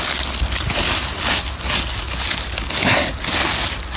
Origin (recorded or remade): recorded